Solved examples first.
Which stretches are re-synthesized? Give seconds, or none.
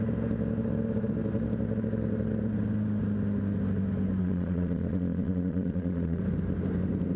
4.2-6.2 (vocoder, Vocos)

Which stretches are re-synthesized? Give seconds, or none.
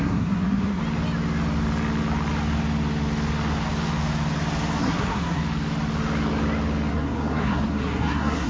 0.0-0.8 (codec, SNAC); 4.8-5.4; 6.9-8.5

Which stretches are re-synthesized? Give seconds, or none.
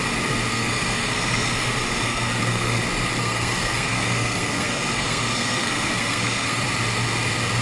0.5-1.7 (codec, SNAC); 2.1-2.8; 3.2-6.6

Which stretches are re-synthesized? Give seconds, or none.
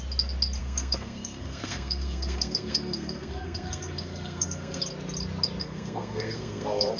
0.6-4.8 (codec, SNAC); 5.6-7.0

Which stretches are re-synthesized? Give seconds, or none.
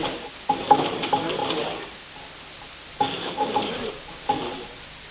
none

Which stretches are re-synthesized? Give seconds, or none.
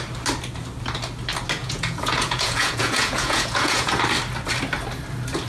1.6-4.0 (vocoder, Vocos)